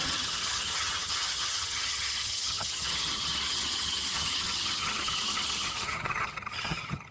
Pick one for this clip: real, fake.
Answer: fake